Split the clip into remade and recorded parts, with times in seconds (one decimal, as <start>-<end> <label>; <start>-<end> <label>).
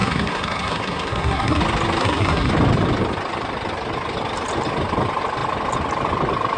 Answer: 0.0-1.6 remade; 1.6-2.0 recorded; 2.0-2.5 remade; 2.5-6.6 recorded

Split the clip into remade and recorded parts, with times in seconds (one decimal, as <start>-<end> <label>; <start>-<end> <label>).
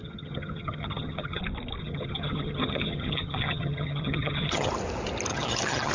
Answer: 0.0-1.4 remade; 1.4-1.8 recorded; 1.8-4.7 remade; 4.7-5.3 recorded; 5.3-5.9 remade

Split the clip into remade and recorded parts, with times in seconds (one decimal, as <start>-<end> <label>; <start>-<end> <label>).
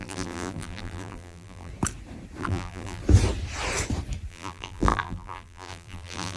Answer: 0.0-1.7 remade; 1.7-2.4 recorded; 2.4-3.0 remade; 3.0-4.3 recorded; 4.3-6.4 remade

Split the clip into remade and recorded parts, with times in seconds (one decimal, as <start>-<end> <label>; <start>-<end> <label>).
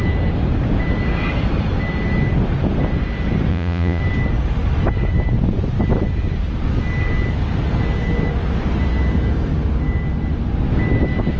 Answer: 0.0-3.5 recorded; 3.5-4.0 remade; 4.0-11.4 recorded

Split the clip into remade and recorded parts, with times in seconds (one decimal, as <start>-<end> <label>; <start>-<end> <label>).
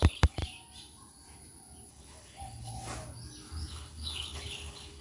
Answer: 0.0-0.4 remade; 0.4-1.9 recorded; 1.9-2.7 remade; 2.7-3.7 recorded; 3.7-5.0 remade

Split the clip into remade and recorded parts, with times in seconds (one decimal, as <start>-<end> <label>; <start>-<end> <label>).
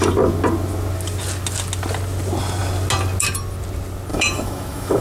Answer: 0.0-4.1 recorded; 4.1-5.0 remade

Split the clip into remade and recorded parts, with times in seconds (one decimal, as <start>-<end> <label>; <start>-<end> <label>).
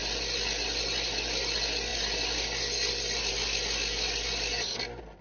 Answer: 0.0-5.2 recorded